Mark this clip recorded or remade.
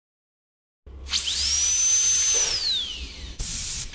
recorded